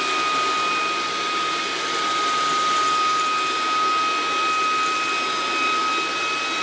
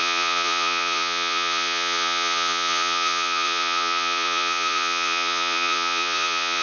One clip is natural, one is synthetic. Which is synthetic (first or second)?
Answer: second